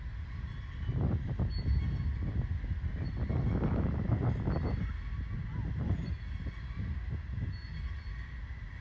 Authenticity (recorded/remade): recorded